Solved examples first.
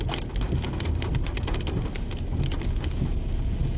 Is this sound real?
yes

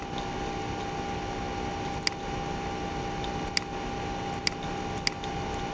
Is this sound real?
yes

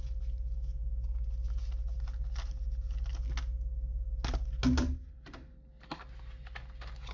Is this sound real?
yes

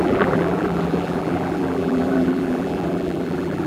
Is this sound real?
no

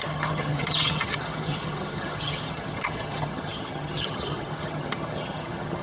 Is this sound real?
no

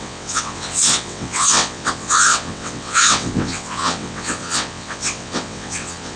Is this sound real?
no